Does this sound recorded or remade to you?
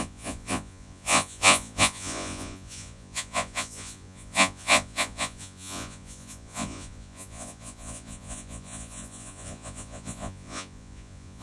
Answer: remade